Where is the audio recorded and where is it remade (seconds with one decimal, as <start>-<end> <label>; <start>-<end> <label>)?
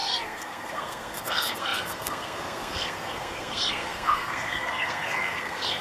0.0-5.8 remade